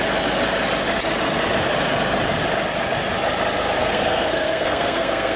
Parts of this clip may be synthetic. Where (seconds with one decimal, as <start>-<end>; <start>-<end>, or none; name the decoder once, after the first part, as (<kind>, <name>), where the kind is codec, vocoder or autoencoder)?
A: 3.8-5.4 (codec, SNAC)